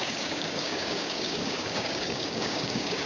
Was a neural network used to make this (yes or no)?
yes